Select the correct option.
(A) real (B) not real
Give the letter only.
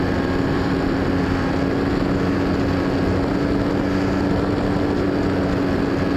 A